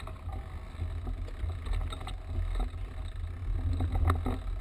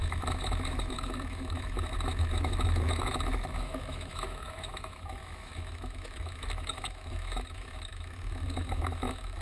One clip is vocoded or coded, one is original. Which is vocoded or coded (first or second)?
second